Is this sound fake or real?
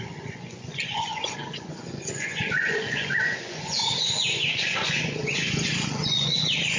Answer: fake